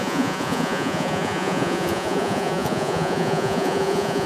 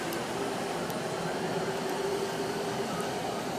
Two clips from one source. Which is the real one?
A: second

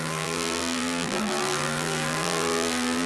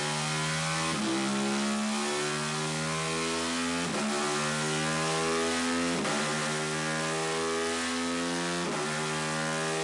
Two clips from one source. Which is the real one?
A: second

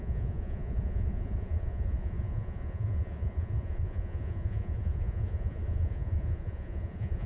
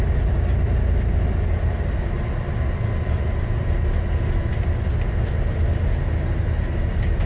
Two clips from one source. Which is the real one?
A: second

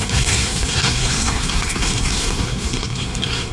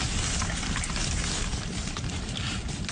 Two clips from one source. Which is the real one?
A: second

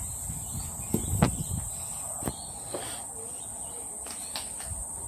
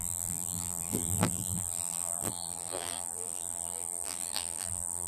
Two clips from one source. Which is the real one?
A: first